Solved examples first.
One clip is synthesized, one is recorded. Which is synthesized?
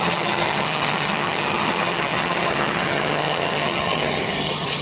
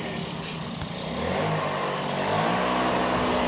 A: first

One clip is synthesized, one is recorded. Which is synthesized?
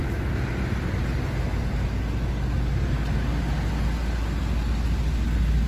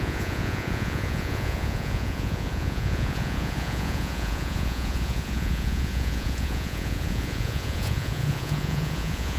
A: second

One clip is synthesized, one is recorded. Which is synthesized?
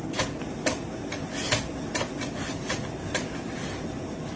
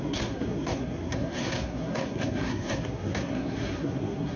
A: second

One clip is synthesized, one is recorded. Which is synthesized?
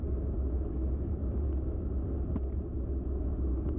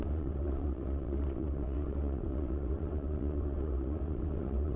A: second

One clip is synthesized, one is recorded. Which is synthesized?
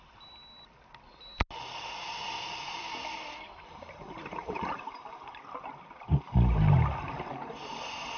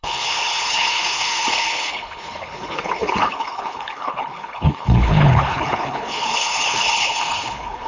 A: second